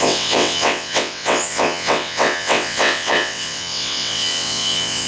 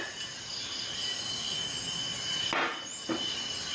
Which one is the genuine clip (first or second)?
second